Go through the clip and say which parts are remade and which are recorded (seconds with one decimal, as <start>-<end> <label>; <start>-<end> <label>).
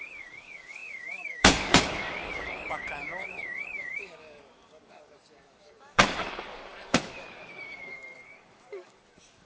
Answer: 0.0-9.4 remade